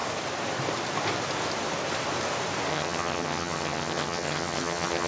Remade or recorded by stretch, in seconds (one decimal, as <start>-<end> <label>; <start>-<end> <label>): 0.0-2.7 recorded; 2.7-5.1 remade